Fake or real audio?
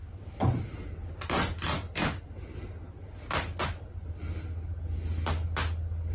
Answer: real